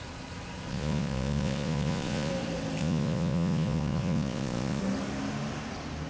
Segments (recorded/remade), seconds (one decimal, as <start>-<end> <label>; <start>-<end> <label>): 0.0-0.7 recorded; 0.7-2.3 remade; 2.3-2.8 recorded; 2.8-4.8 remade; 4.8-6.1 recorded